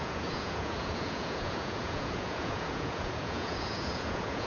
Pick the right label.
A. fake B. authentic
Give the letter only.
A